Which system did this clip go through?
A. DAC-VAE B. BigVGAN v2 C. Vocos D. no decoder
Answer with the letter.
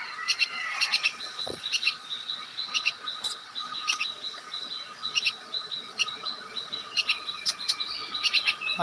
C